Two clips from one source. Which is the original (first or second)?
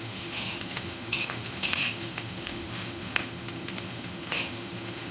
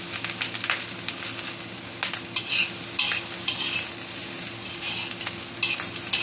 second